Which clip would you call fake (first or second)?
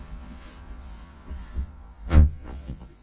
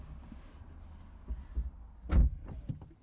first